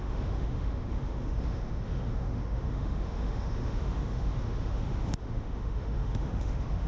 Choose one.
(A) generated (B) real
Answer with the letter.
A